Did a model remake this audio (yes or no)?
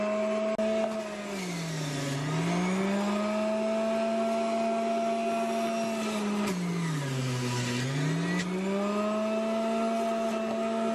no